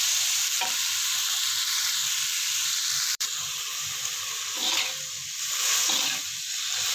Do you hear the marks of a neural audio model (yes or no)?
yes